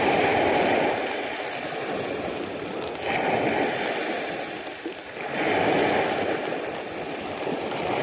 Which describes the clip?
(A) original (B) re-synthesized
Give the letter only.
A